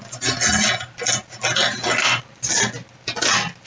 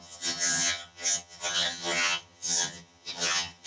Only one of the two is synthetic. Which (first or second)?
second